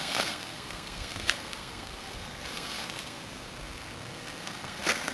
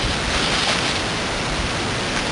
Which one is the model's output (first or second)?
first